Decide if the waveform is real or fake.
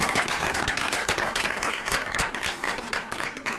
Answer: fake